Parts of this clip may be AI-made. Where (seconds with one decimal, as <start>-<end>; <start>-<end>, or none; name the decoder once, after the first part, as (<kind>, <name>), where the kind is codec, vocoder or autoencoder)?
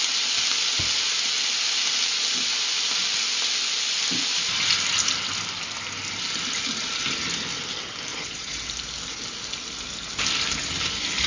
8.1-8.6 (vocoder, Vocos)